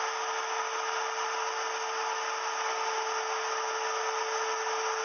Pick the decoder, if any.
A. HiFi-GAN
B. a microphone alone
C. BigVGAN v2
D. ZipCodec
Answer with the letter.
B